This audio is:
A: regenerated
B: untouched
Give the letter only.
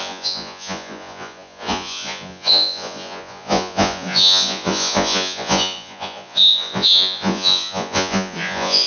A